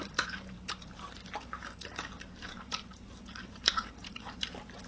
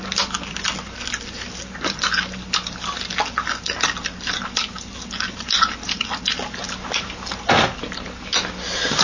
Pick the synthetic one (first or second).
first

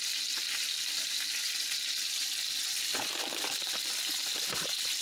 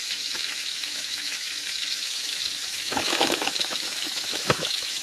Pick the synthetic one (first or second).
second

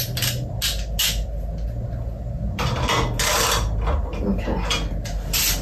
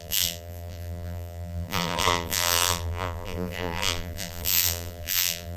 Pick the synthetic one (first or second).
second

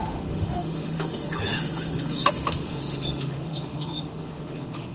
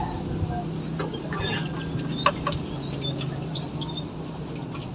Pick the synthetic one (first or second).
first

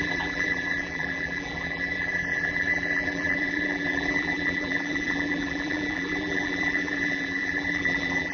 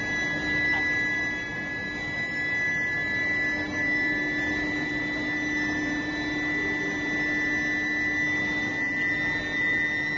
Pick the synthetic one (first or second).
first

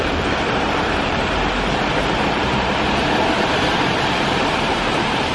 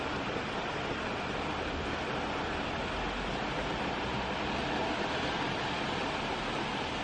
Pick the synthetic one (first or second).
first